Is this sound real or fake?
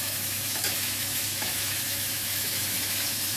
fake